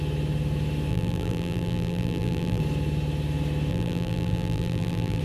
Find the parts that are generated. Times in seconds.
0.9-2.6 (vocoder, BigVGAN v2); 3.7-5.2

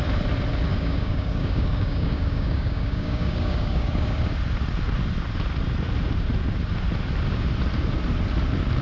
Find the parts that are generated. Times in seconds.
0.7-4.2 (codec, DAC)

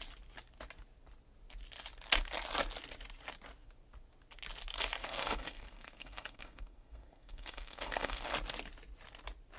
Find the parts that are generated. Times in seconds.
5.0-8.3 (codec, SNAC)

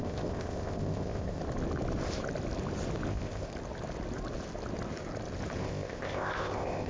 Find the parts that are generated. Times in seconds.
0.0-1.4 (codec, ZipCodec); 3.1-3.5; 5.6-6.9

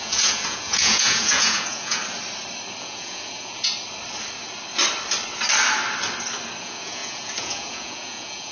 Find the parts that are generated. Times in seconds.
0.0-2.0 (vocoder, Vocos); 2.8-3.7; 6.6-8.5

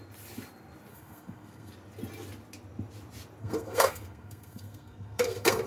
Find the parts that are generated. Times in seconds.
0.9-1.7 (codec, SNAC); 3.4-5.7

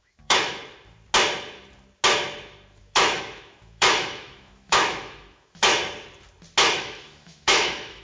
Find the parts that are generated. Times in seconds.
0.0-0.6 (autoencoder, DAC-VAE); 2.8-5.8; 6.7-8.0

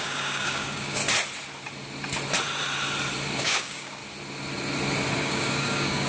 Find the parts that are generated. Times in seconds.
0.0-1.0 (codec, DAC); 3.4-4.0; 5.2-6.1